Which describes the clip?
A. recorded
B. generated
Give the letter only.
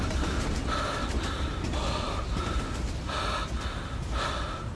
A